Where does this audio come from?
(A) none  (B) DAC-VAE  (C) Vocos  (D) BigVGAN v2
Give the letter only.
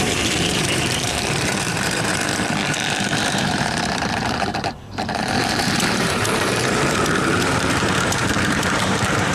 D